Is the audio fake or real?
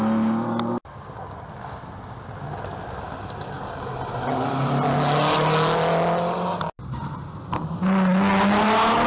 real